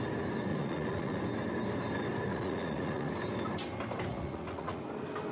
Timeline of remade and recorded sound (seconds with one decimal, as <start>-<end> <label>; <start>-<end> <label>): 0.0-0.5 recorded; 0.5-1.2 remade; 1.2-2.3 recorded; 2.3-3.1 remade; 3.1-4.1 recorded; 4.1-4.8 remade; 4.8-5.3 recorded